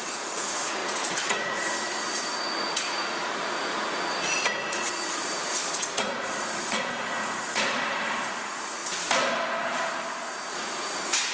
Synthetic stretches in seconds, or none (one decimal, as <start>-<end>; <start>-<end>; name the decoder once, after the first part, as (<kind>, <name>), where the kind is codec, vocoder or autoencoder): 0.0-8.8 (vocoder, Vocos); 10.5-11.3